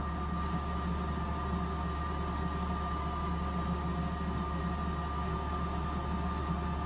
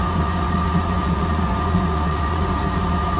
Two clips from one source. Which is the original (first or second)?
first